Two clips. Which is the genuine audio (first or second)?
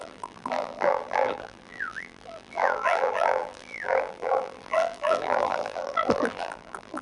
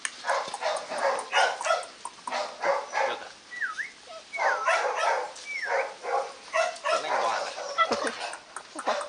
second